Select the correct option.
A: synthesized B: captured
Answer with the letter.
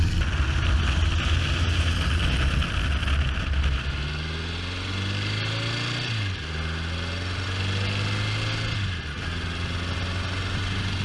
B